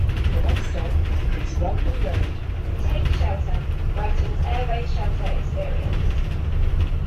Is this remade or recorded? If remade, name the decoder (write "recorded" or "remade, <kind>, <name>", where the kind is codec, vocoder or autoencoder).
remade, vocoder, BigVGAN v2